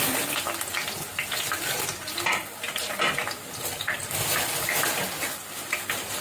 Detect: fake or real real